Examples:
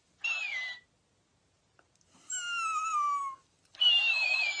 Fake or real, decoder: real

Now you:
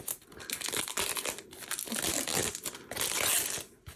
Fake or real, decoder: real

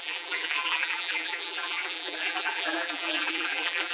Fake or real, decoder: fake, vocoder, BigVGAN v2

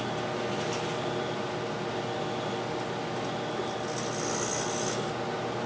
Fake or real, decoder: real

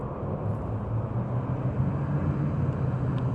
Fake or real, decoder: real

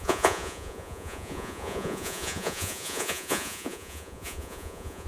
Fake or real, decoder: fake, vocoder, Vocos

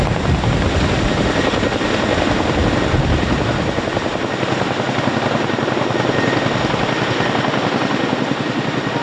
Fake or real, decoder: real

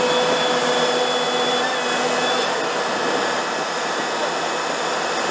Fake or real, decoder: real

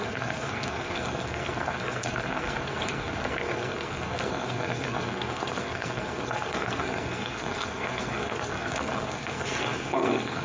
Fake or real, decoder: fake, codec, SNAC